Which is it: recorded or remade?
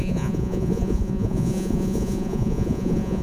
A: remade